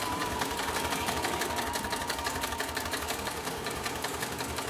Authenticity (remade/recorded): remade